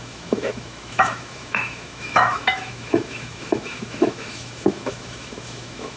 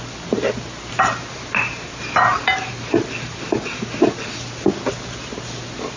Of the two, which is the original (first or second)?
second